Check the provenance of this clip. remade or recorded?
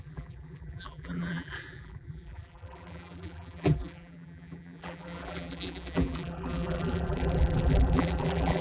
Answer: remade